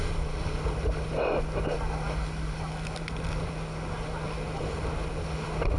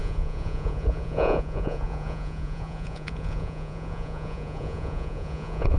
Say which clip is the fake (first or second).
second